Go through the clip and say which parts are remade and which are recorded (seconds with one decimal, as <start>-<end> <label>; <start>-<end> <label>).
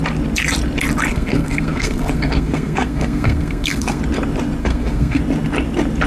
0.0-1.1 recorded; 1.1-4.0 remade; 4.0-4.6 recorded; 4.6-5.2 remade; 5.2-6.1 recorded